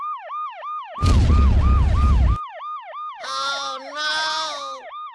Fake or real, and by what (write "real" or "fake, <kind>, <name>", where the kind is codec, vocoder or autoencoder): real